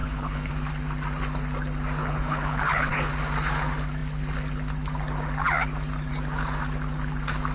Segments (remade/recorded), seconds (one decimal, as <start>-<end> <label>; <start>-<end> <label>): 0.0-0.5 remade; 0.5-2.0 recorded; 2.0-3.1 remade; 3.1-7.5 recorded